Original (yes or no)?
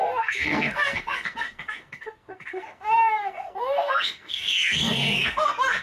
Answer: no